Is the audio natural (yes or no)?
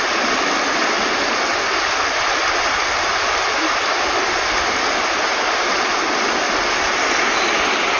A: yes